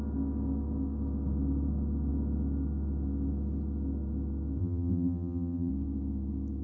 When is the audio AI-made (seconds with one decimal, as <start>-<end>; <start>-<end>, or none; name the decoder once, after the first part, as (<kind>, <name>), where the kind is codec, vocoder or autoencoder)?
4.6-5.7 (vocoder, BigVGAN v2)